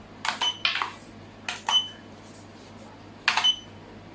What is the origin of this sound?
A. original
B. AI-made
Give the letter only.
A